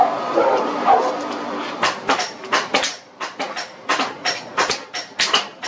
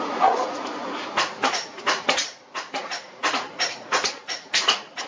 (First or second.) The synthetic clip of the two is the second